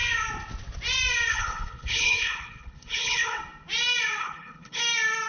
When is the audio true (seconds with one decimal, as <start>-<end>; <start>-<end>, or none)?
0.0-1.3; 3.4-4.2; 4.8-5.3